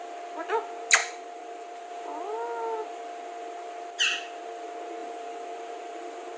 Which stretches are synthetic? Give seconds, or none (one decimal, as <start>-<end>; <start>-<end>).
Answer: 1.0-1.9; 5.0-6.4